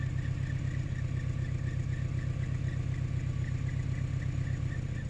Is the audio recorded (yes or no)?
yes